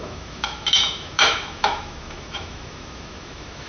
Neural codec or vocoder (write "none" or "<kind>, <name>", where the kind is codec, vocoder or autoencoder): autoencoder, DAC-VAE